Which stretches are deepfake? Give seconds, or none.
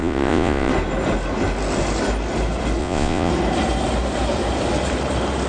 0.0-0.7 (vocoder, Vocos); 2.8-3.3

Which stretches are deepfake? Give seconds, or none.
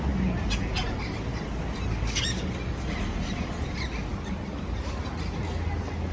none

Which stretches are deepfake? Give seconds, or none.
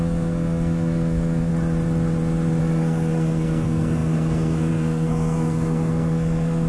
0.0-1.5 (codec, SNAC); 2.6-6.7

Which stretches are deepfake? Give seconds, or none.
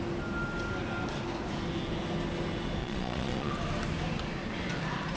2.8-3.5 (vocoder, Vocos)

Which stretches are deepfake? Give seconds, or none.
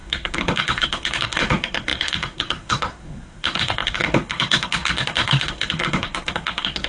0.0-6.9 (codec, SNAC)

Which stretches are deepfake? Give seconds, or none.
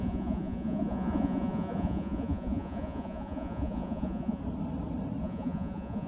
0.0-4.4 (vocoder, Vocos); 5.2-6.1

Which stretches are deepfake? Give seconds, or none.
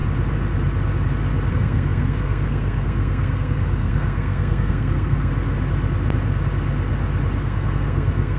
1.5-5.3 (codec, SNAC); 7.4-8.4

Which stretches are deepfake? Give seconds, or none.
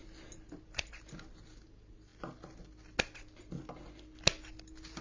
none